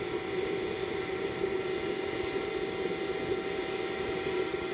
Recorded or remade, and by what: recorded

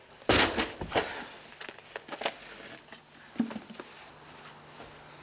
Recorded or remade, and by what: recorded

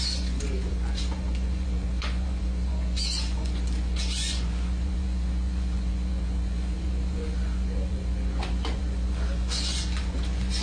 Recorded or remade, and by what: remade, vocoder, Vocos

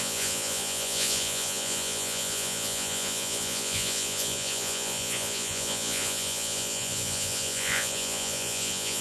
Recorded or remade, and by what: remade, vocoder, Vocos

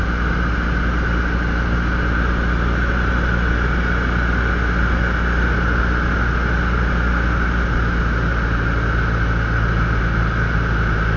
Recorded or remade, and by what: recorded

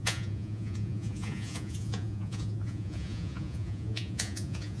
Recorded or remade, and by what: remade, vocoder, Vocos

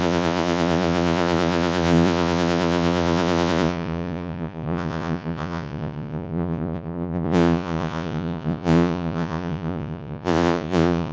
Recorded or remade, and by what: remade, vocoder, Vocos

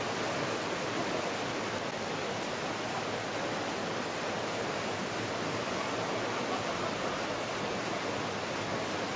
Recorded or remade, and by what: recorded